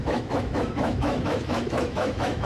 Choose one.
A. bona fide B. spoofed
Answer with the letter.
B